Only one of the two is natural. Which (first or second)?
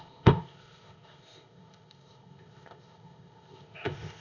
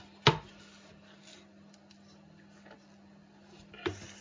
second